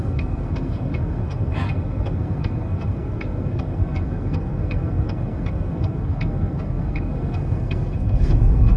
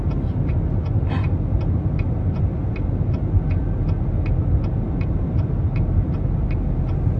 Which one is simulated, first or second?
first